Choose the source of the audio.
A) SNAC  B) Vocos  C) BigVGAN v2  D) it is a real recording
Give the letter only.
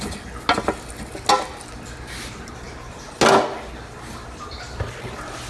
D